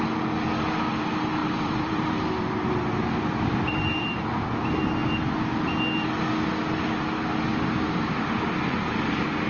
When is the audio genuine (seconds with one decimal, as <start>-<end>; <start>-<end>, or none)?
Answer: 0.0-1.4; 4.5-9.5